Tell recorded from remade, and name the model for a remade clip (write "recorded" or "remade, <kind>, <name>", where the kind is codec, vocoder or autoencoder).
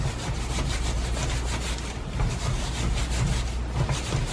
recorded